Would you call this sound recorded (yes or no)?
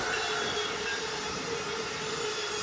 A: yes